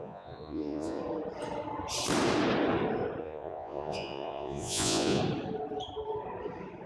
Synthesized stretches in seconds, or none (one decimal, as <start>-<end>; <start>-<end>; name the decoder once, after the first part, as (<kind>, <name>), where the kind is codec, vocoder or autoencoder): 0.0-1.0 (vocoder, Vocos); 3.2-5.2